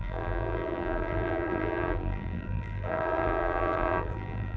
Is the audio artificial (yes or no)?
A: yes